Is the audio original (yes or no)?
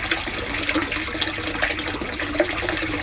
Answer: yes